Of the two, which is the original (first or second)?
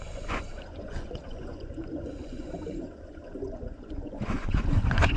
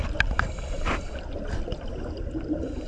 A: second